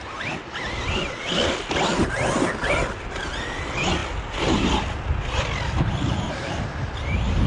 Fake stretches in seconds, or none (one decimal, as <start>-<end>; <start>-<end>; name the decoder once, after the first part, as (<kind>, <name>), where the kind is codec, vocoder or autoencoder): none